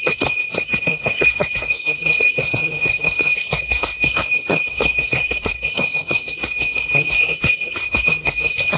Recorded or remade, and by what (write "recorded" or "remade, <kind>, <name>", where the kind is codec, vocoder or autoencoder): remade, codec, SNAC